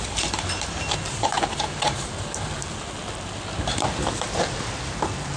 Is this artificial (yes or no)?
no